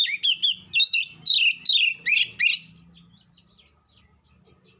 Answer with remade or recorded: recorded